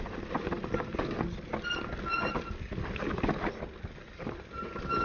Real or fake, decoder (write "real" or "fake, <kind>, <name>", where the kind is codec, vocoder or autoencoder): real